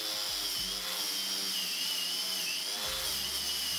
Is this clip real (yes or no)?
yes